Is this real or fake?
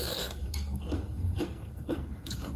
fake